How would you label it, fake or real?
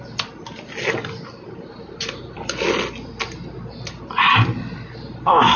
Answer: real